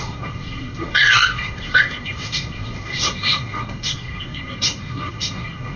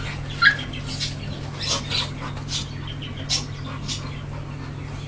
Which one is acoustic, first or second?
second